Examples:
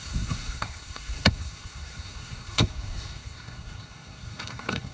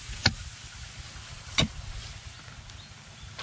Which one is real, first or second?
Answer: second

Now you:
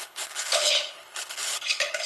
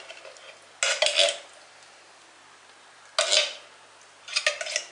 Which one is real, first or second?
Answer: second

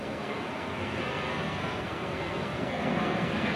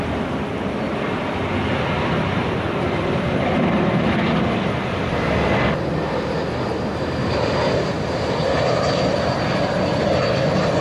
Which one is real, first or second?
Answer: second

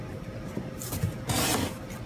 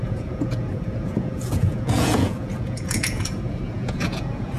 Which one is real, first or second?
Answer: first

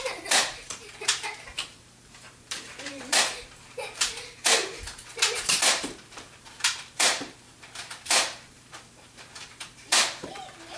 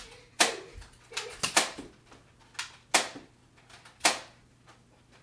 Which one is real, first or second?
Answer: second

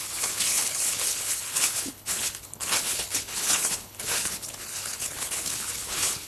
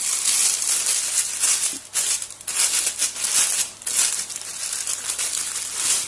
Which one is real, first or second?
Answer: second